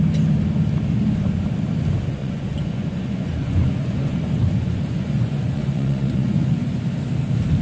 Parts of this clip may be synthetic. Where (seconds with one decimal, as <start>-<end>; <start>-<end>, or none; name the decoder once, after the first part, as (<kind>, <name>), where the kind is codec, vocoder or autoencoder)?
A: 2.2-6.8 (vocoder, Vocos)